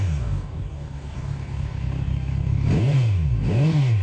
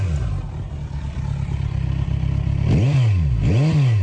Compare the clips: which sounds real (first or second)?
second